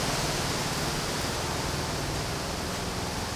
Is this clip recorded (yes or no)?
yes